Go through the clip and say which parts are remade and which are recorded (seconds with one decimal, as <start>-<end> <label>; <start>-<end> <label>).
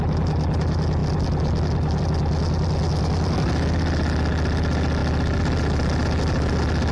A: 0.0-6.9 recorded